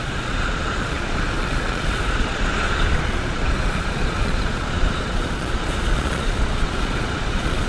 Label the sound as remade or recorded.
remade